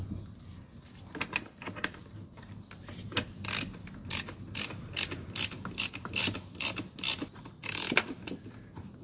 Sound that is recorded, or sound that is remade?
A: recorded